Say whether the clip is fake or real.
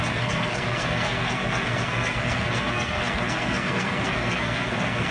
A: fake